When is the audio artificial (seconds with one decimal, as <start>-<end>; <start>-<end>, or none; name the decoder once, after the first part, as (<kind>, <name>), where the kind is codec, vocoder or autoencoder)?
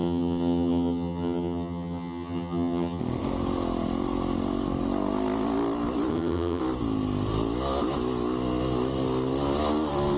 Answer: 0.0-3.0 (vocoder, HiFi-GAN); 6.1-6.6